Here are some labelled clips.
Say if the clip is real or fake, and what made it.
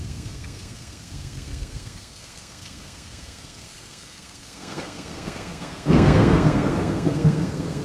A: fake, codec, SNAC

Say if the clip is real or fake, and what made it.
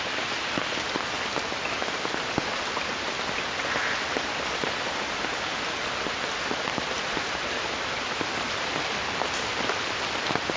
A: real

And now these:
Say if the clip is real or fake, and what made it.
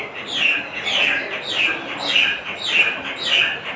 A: real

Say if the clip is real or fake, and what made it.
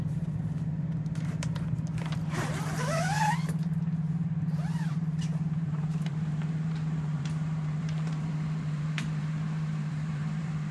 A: fake, vocoder, BigVGAN v2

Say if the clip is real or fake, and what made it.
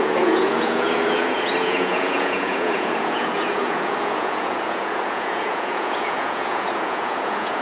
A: fake, vocoder, Vocos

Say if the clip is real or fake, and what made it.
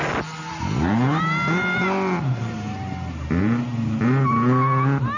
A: real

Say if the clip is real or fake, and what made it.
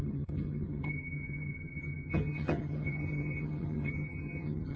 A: fake, vocoder, HiFi-GAN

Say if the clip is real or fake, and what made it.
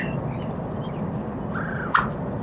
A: fake, vocoder, BigVGAN v2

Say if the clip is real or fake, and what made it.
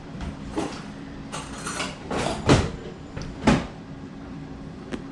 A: fake, vocoder, BigVGAN v2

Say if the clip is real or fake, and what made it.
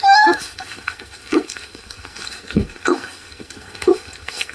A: fake, codec, SNAC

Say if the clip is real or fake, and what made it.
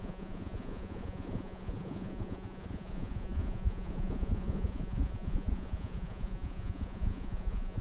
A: fake, vocoder, Vocos